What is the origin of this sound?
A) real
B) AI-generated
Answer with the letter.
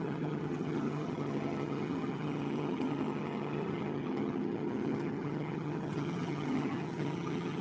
B